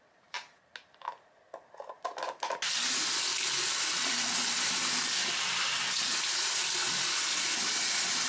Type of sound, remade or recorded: recorded